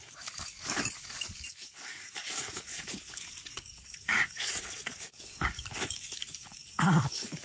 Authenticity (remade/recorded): remade